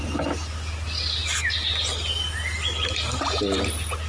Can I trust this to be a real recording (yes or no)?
yes